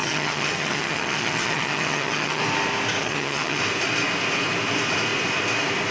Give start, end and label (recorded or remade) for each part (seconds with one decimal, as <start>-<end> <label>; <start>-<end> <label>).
0.0-2.4 remade; 2.4-3.0 recorded; 3.0-3.6 remade; 3.6-5.9 recorded